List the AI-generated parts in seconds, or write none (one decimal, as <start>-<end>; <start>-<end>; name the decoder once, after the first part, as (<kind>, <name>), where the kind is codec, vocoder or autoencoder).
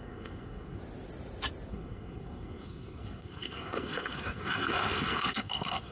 0.0-0.8 (codec, SNAC); 1.7-5.9